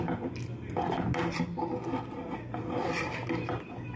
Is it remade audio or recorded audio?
recorded